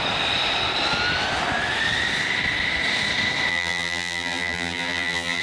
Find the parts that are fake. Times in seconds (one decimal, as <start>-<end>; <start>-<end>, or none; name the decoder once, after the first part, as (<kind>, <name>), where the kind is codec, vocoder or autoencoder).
3.5-5.4 (vocoder, BigVGAN v2)